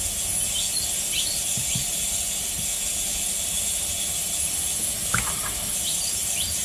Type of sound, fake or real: real